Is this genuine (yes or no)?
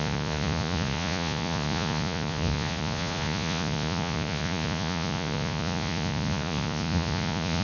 no